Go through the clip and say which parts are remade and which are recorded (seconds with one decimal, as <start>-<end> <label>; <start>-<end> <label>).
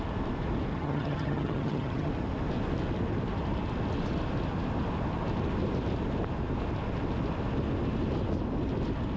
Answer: 0.0-0.7 recorded; 0.7-2.1 remade; 2.1-9.2 recorded